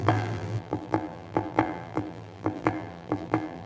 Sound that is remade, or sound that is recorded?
remade